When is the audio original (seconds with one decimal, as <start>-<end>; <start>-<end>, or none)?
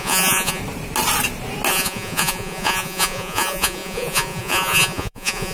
0.6-1.7